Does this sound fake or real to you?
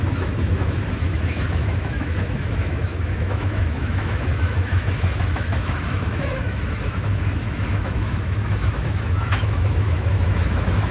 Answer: fake